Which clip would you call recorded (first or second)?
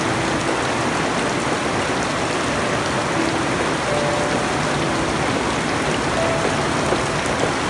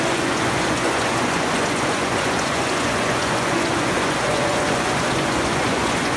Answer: first